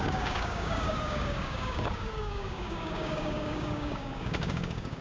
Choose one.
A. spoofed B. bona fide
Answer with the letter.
A